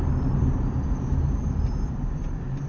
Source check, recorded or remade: remade